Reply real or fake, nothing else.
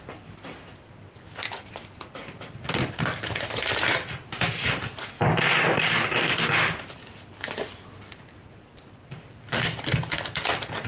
real